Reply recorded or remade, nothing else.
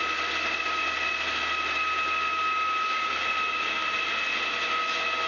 recorded